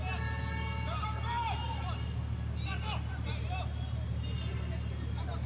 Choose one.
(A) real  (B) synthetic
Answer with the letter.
A